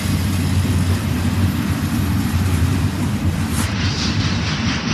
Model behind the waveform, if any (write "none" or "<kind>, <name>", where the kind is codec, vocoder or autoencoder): none